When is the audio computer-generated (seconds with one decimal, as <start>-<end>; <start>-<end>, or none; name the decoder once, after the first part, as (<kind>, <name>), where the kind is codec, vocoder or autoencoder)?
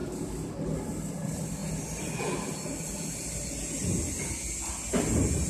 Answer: none